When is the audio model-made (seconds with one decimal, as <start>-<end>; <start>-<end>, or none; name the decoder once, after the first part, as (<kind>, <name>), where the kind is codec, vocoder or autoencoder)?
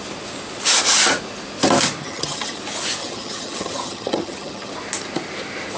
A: 2.0-2.6 (vocoder, HiFi-GAN); 3.0-4.7